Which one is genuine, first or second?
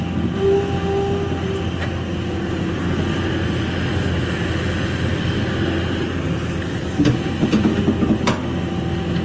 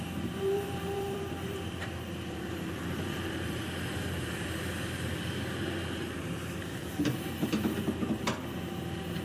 first